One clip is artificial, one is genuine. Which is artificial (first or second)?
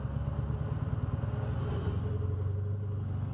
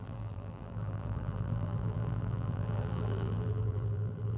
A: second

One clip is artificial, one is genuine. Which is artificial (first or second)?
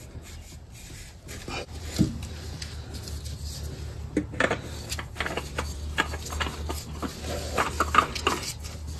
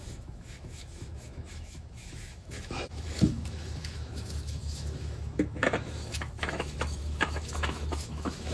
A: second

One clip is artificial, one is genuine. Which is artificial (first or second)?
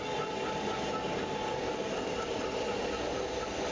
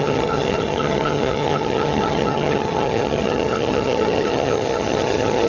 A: second